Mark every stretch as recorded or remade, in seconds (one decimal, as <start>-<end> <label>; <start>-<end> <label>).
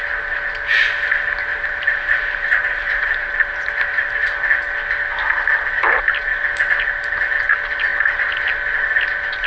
0.0-1.5 recorded; 1.5-4.4 remade; 4.4-9.5 recorded